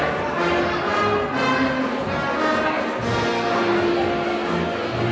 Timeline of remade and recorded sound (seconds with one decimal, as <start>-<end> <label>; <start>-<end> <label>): 0.0-5.1 recorded